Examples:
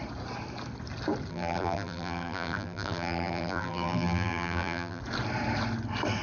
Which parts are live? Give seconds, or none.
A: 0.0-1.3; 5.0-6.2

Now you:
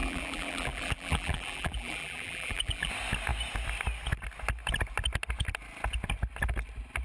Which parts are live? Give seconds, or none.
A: 2.9-7.0

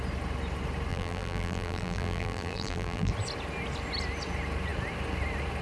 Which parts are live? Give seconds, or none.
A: 0.0-0.9; 3.1-5.6

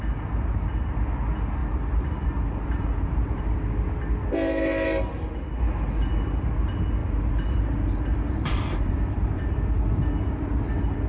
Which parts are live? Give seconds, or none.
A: 0.0-1.6; 3.4-7.0; 9.5-11.1

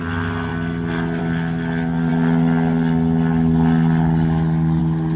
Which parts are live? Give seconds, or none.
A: 0.0-5.2

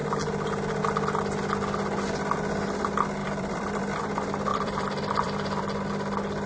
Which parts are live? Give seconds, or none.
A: 0.0-3.2; 3.8-4.5; 5.9-6.5

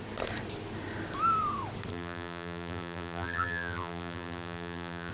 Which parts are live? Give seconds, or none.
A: 0.0-1.9